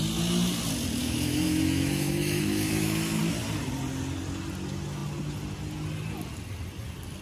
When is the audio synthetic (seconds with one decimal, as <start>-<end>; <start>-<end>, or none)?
1.0-3.2